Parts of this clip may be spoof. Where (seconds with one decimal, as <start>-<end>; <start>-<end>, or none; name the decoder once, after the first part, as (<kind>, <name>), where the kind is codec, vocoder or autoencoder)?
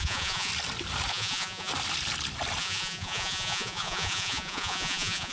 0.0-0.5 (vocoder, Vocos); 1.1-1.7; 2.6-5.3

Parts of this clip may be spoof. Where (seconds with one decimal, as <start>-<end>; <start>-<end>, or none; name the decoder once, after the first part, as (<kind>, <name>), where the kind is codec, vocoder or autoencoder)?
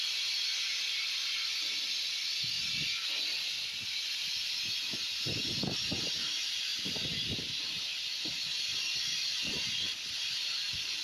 none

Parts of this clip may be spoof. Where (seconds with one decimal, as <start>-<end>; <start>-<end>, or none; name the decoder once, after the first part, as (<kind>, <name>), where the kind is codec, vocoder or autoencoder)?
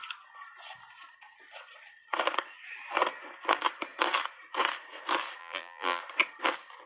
5.4-6.0 (vocoder, BigVGAN v2)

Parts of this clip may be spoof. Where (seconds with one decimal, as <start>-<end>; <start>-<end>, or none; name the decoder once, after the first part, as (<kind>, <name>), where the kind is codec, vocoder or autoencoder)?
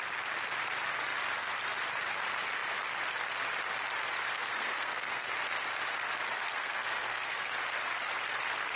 4.3-5.3 (codec, SNAC); 6.5-7.5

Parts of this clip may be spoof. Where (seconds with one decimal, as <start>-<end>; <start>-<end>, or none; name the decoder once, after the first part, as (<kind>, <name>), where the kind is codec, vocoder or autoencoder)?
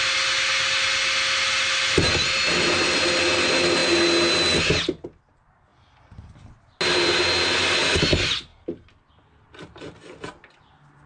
none